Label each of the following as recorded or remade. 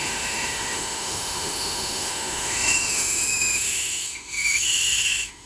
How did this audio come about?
remade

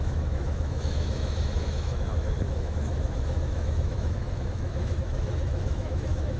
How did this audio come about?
remade